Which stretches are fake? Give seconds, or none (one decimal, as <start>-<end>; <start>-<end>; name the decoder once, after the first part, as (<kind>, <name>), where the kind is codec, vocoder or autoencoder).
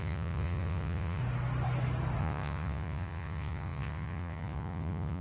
0.0-1.2 (vocoder, Vocos); 2.2-5.2